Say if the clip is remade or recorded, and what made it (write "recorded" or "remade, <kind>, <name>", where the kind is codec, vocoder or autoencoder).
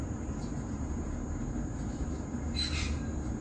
recorded